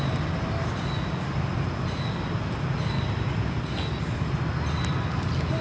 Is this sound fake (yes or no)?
no